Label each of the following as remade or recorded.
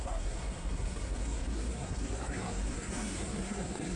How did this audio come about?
remade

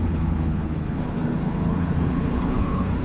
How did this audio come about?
remade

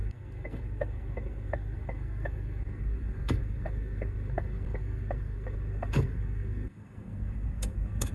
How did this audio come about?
remade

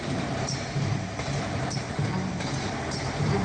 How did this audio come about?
remade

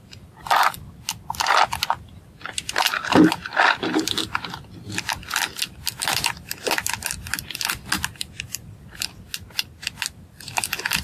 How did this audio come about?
recorded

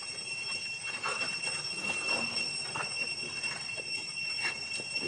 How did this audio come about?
recorded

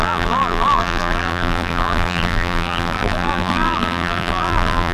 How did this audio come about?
remade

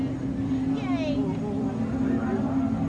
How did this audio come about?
recorded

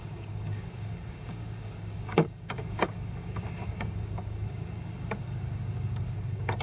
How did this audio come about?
remade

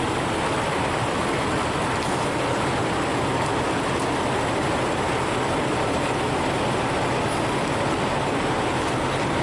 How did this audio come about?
recorded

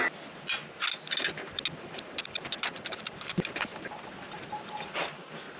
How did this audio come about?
recorded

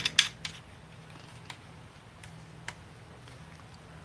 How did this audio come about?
recorded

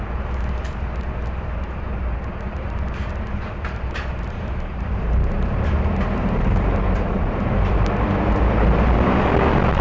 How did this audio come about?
remade